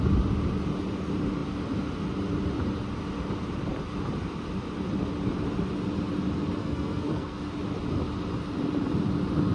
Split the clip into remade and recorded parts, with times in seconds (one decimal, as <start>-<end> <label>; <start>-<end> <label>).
0.0-6.6 recorded; 6.6-7.4 remade; 7.4-9.5 recorded